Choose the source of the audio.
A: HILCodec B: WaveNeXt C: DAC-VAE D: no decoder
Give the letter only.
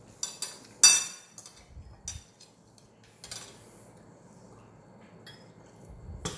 D